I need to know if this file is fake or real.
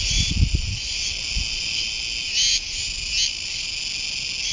real